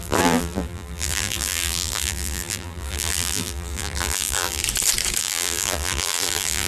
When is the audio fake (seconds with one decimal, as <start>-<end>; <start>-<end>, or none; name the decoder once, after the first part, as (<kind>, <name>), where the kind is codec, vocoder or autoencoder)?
0.0-4.6 (vocoder, BigVGAN v2); 5.2-6.7